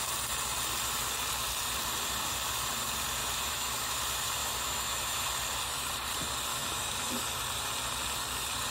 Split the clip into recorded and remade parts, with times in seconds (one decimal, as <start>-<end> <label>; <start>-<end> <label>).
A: 0.0-3.2 recorded; 3.2-4.0 remade; 4.0-4.4 recorded; 4.4-5.3 remade; 5.3-6.5 recorded; 6.5-7.1 remade; 7.1-8.7 recorded

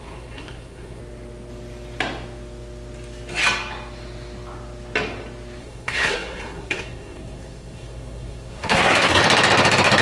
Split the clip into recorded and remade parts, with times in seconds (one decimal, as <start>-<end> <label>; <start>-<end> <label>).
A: 0.0-1.0 remade; 1.0-5.6 recorded; 5.6-9.2 remade; 9.2-10.0 recorded

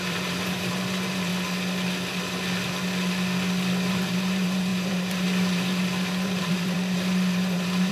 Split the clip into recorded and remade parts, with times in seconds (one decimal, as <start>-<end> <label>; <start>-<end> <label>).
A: 0.0-1.3 remade; 1.3-3.9 recorded; 3.9-7.9 remade

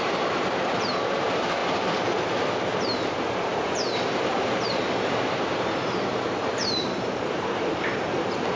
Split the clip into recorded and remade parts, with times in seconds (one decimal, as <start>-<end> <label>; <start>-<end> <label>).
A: 0.0-1.6 remade; 1.6-3.1 recorded; 3.1-8.6 remade